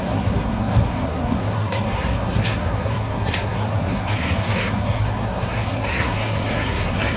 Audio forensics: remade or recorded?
remade